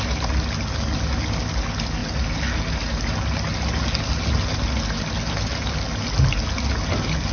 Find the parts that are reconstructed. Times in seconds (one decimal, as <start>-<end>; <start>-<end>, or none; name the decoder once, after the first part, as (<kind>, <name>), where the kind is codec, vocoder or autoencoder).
none